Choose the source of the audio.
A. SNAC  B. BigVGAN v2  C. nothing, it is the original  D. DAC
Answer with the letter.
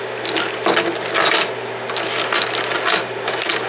C